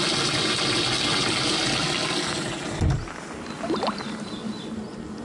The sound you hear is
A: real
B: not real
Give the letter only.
A